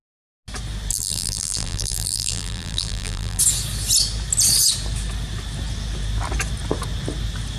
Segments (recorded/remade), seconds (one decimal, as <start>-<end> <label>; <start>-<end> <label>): 0.0-0.9 recorded; 0.9-3.4 remade; 3.4-7.6 recorded